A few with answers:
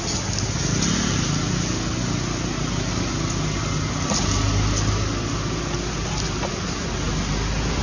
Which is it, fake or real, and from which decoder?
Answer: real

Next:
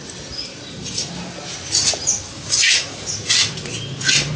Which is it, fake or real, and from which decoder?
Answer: real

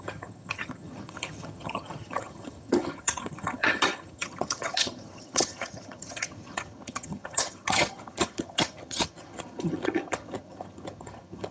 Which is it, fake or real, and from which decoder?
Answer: fake, vocoder, HiFi-GAN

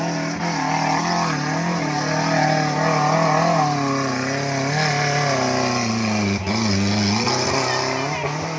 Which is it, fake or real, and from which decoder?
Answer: real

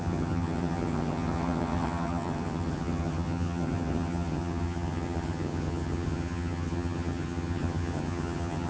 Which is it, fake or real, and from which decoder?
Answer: fake, vocoder, HiFi-GAN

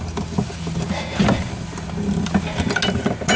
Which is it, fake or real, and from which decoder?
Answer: real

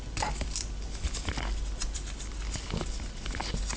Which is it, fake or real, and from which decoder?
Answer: real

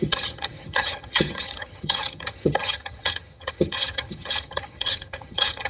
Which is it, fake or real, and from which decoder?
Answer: fake, vocoder, HiFi-GAN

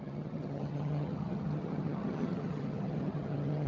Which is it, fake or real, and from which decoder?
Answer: fake, vocoder, HiFi-GAN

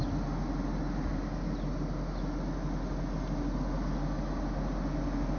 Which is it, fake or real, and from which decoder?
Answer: real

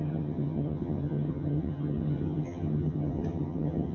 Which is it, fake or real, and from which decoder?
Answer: fake, vocoder, HiFi-GAN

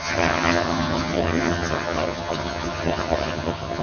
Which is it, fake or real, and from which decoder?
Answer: fake, vocoder, HiFi-GAN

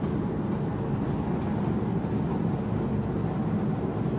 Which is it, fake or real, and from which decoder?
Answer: real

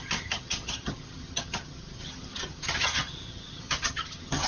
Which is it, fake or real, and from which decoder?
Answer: fake, vocoder, HiFi-GAN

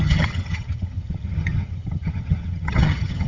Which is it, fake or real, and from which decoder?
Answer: fake, vocoder, HiFi-GAN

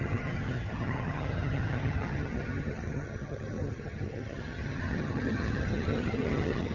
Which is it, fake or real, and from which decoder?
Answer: fake, vocoder, HiFi-GAN